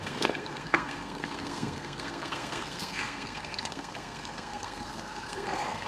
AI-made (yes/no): yes